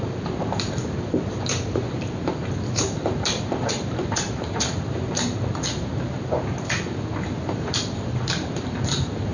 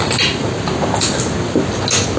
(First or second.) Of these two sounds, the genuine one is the second